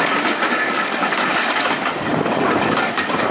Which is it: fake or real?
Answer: fake